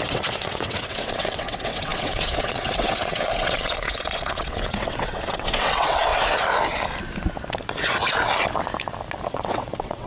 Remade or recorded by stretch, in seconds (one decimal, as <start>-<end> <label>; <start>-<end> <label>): 0.0-6.1 remade; 6.1-9.3 recorded; 9.3-10.1 remade